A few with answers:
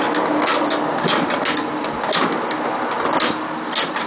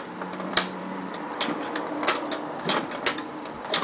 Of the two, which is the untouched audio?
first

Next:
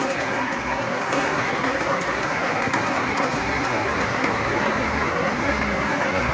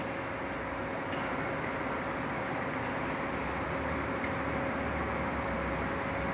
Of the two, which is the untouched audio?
second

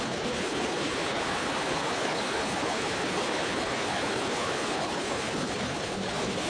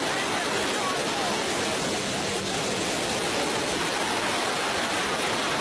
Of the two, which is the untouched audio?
second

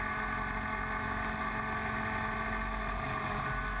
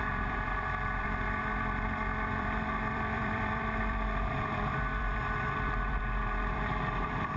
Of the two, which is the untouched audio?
first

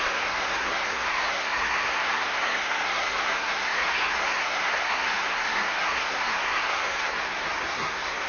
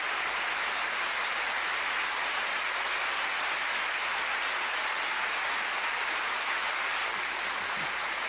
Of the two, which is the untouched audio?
second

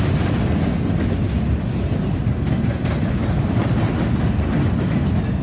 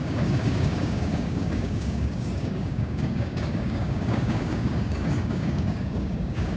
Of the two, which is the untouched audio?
first